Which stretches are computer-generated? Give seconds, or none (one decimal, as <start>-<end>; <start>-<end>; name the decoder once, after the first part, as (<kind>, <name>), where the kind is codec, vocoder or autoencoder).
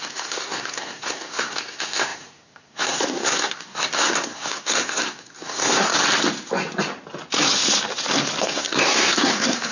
0.0-5.9 (codec, SNAC); 8.4-9.7